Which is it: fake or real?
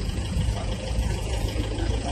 fake